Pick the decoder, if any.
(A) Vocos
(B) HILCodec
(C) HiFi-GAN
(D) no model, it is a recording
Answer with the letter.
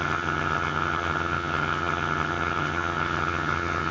C